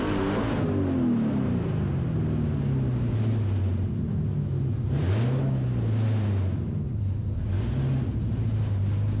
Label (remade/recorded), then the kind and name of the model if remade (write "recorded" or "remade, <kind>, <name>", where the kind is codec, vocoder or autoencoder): recorded